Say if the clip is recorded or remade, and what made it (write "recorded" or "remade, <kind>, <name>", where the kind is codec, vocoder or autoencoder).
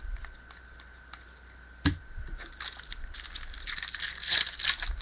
recorded